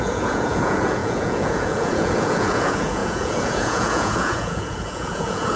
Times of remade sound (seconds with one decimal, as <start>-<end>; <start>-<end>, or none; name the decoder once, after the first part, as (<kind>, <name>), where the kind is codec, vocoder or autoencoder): 0.0-5.6 (vocoder, Vocos)